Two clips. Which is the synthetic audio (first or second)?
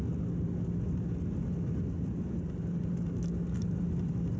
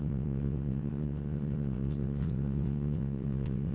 second